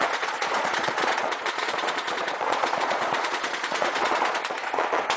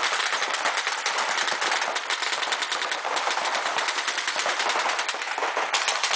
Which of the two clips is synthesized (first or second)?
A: first